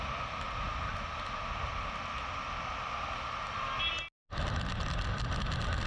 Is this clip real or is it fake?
real